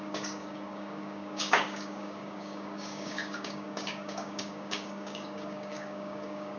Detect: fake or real fake